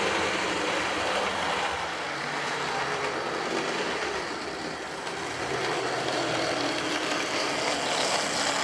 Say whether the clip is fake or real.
real